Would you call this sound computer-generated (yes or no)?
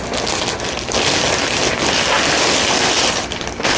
no